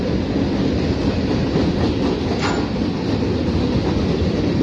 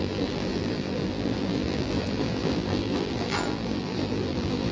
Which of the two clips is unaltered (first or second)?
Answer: first